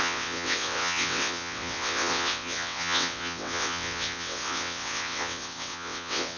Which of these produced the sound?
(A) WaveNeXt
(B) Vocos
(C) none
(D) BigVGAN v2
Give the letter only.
A